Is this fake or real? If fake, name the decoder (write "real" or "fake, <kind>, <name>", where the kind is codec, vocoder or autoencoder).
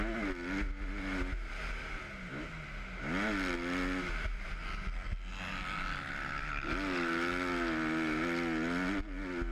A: real